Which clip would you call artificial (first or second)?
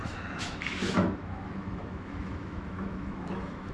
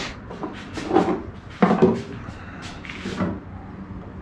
first